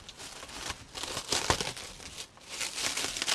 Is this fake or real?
real